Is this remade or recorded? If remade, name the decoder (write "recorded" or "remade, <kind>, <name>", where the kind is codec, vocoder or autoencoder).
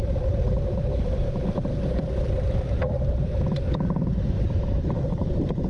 remade, vocoder, BigVGAN v2